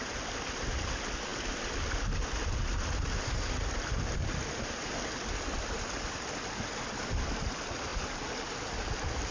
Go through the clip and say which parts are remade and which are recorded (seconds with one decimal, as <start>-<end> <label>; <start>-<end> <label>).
0.0-9.3 recorded